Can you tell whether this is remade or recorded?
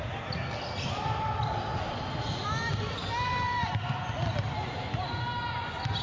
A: recorded